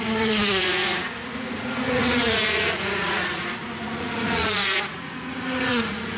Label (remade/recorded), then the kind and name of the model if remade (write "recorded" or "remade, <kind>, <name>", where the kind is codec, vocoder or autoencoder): remade, vocoder, Vocos